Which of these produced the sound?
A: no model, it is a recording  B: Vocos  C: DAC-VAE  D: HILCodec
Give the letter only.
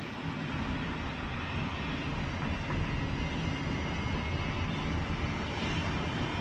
A